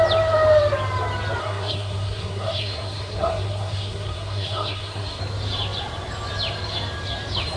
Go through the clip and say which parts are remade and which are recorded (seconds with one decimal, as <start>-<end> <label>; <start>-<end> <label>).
0.0-1.4 recorded; 1.4-5.2 remade; 5.2-7.6 recorded